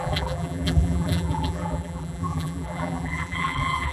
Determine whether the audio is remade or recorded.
remade